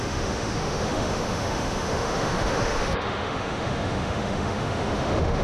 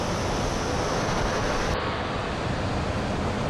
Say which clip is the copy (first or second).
first